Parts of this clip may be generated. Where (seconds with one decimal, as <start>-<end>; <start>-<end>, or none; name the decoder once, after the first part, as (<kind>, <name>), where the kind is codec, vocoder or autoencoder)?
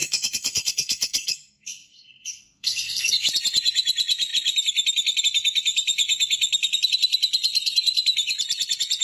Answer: 0.0-3.3 (codec, SNAC)